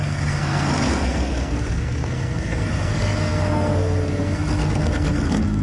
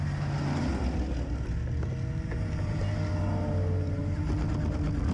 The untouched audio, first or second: second